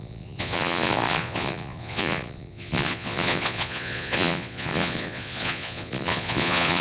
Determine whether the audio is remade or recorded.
remade